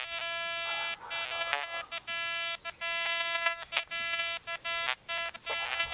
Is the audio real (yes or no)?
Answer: yes